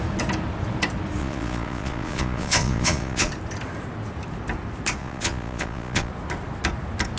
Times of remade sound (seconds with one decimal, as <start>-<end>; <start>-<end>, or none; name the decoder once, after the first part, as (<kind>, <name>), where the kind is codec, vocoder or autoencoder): 1.2-3.3 (vocoder, Vocos); 5.0-6.1